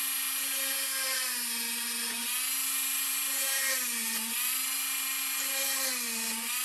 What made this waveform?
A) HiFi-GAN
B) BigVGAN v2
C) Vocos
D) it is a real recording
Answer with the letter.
D